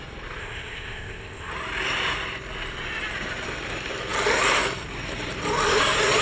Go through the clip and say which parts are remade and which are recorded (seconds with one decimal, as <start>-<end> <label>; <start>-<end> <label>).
0.0-0.4 recorded; 0.4-1.5 remade; 1.5-6.2 recorded